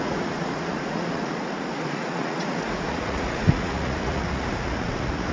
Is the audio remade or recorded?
remade